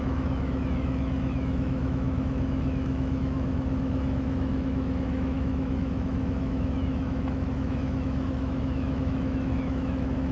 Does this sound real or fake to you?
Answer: fake